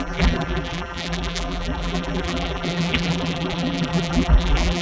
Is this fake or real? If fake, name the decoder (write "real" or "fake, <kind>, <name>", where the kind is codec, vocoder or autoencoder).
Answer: fake, vocoder, BigVGAN v2